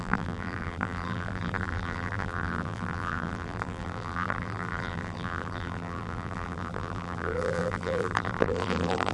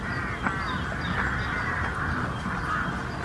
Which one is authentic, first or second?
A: second